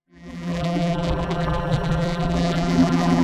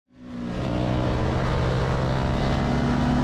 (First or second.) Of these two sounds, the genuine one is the second